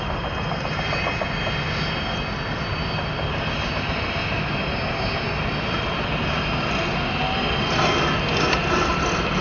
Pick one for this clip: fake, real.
real